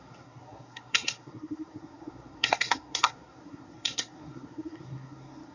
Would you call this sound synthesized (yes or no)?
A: yes